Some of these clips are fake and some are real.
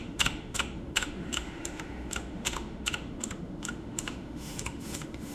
fake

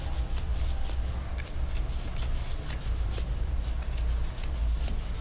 real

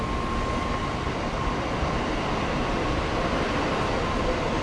real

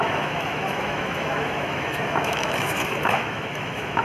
fake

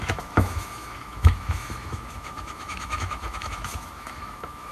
fake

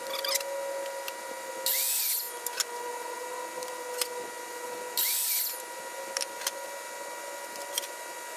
real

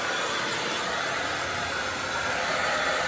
real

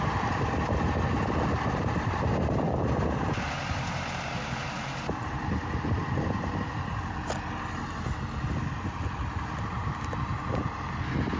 real